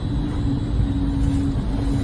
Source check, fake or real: real